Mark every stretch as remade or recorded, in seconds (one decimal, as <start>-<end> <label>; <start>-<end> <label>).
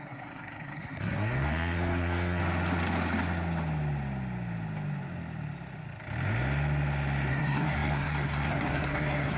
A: 0.0-2.4 remade; 2.4-7.3 recorded; 7.3-9.4 remade